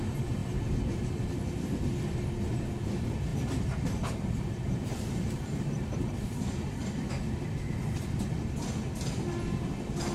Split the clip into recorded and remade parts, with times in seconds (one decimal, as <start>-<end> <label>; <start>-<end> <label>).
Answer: 0.0-0.4 recorded; 0.4-1.1 remade; 1.1-3.3 recorded; 3.3-6.9 remade; 6.9-10.1 recorded